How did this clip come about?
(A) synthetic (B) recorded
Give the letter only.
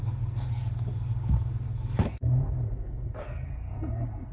A